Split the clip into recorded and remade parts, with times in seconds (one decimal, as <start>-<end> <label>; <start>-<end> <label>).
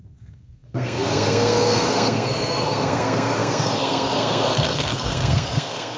0.0-6.0 remade